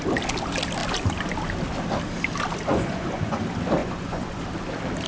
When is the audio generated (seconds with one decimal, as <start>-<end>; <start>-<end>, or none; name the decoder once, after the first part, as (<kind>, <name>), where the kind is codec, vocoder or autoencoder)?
2.7-3.4 (vocoder, Vocos); 3.8-4.4